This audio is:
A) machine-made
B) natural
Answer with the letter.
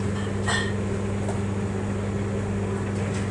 B